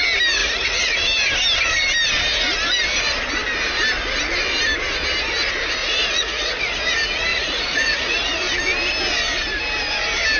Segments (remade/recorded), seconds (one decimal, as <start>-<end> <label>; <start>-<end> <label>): 0.0-0.4 recorded; 0.4-1.0 remade; 1.0-5.8 recorded; 5.8-6.7 remade; 6.7-7.3 recorded; 7.3-8.5 remade; 8.5-10.4 recorded